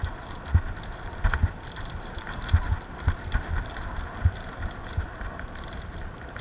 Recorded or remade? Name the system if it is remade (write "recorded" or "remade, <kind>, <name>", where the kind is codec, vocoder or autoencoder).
recorded